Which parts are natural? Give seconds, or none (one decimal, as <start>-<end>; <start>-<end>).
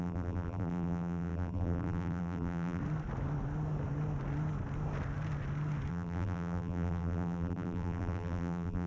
2.8-5.9